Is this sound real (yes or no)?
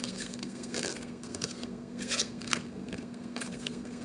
no